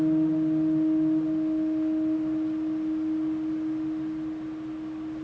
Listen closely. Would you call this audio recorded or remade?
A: recorded